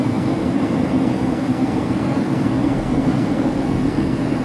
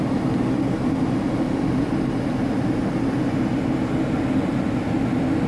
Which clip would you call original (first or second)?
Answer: second